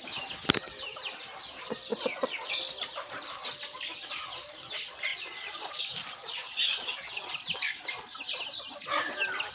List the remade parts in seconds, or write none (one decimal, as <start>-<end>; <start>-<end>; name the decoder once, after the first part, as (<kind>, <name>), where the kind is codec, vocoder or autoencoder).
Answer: 1.9-2.6 (vocoder, Vocos); 5.1-5.8; 6.2-7.4